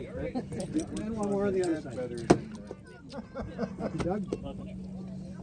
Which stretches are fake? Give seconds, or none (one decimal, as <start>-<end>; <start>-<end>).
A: none